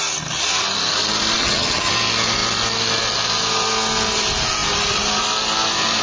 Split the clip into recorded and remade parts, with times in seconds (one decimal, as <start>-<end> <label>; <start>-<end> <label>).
0.0-1.4 recorded; 1.4-1.9 remade; 1.9-6.0 recorded